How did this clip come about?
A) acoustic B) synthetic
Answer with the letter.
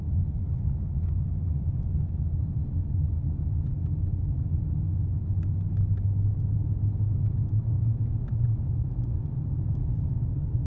A